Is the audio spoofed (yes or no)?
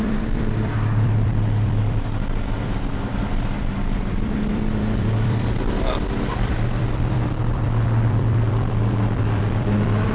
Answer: yes